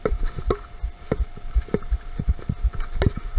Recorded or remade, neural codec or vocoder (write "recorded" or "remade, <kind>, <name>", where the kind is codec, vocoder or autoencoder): recorded